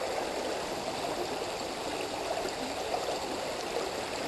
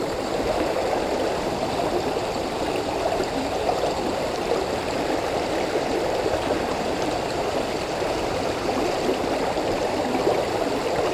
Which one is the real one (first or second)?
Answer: first